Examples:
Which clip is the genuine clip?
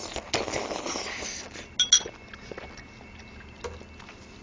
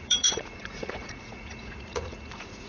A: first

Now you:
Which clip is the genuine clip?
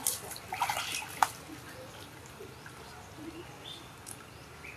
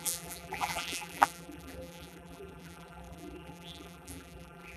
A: first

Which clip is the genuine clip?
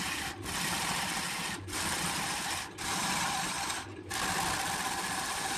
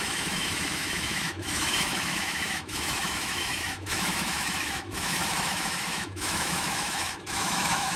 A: first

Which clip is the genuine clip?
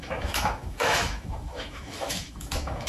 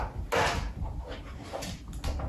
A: second